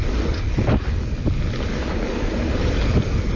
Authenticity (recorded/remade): recorded